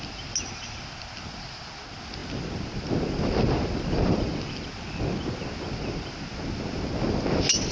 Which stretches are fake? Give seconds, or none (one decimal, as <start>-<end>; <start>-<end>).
none